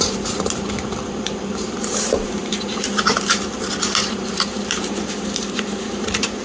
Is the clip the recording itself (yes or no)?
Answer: no